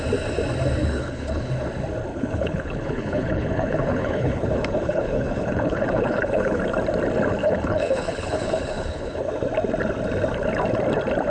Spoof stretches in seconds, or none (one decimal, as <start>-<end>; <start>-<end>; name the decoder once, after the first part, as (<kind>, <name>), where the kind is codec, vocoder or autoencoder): 0.8-1.5 (codec, HILCodec); 2.1-6.6; 7.4-9.3

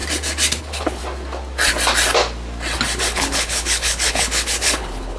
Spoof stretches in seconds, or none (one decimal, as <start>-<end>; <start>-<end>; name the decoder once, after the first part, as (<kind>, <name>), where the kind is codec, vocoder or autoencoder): 0.6-1.0 (codec, HILCodec); 3.0-5.2

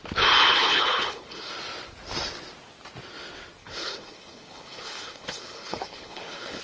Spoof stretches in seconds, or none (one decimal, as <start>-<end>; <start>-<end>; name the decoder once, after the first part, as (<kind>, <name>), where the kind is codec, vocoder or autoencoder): 0.6-1.5 (codec, HILCodec); 3.6-6.6